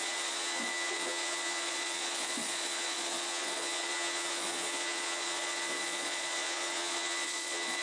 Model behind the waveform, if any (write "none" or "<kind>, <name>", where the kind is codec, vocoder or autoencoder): vocoder, Vocos